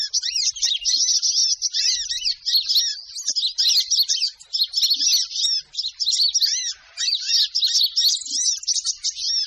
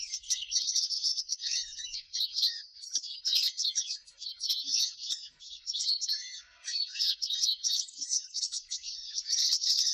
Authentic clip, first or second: first